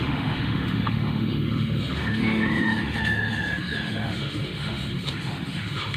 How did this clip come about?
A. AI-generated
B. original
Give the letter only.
A